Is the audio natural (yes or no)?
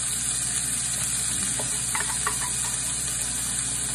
yes